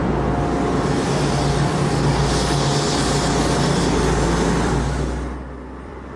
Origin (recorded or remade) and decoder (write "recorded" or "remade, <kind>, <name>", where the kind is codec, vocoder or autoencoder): remade, vocoder, BigVGAN v2